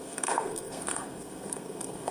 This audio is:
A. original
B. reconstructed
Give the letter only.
B